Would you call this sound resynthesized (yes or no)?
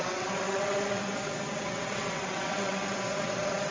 yes